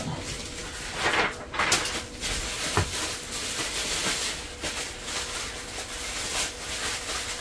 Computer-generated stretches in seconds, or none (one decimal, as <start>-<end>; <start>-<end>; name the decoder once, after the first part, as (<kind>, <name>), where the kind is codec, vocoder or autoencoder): none